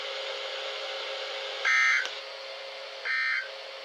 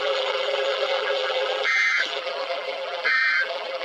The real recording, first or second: first